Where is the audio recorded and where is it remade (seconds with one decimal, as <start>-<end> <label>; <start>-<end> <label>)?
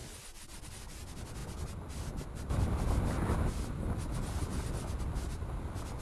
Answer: 0.0-6.0 recorded